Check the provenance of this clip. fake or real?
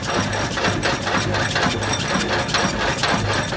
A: real